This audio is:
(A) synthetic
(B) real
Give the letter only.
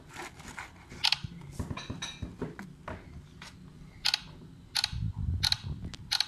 B